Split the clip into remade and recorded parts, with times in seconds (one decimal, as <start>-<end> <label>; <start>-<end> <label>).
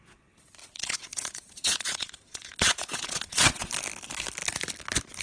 0.0-0.6 recorded; 0.6-3.7 remade; 3.7-5.2 recorded